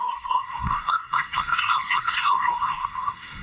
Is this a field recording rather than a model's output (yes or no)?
no